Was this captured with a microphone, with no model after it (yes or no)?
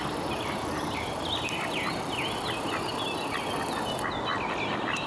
yes